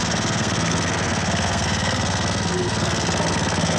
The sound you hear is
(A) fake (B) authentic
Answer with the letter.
A